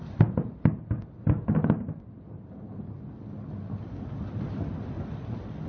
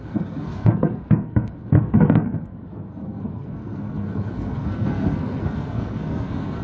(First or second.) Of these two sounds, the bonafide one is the first